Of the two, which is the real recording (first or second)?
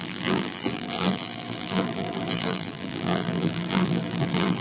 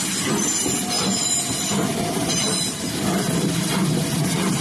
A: second